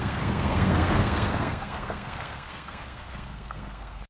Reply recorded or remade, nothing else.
remade